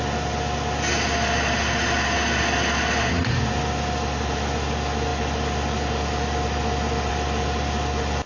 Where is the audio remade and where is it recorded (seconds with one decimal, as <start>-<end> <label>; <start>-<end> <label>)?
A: 0.0-8.3 recorded